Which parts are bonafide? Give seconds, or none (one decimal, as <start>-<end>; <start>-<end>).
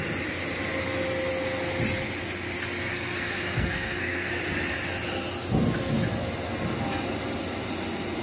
0.0-2.9; 4.3-8.2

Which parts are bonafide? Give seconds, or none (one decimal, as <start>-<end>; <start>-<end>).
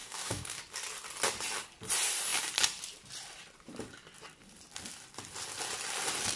0.6-6.4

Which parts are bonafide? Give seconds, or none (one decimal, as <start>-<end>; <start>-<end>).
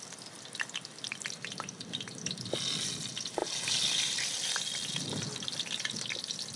0.0-6.6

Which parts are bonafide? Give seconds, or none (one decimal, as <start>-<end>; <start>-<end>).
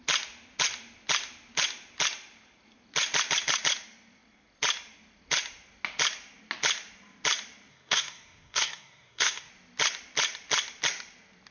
0.0-7.7; 9.5-11.5